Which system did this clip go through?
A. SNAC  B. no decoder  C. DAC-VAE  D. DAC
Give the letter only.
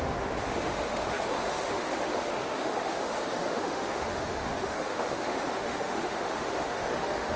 C